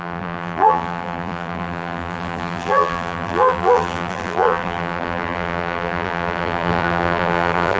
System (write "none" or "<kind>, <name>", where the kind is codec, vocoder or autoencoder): vocoder, BigVGAN v2